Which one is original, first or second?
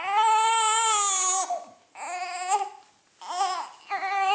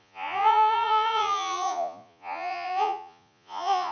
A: first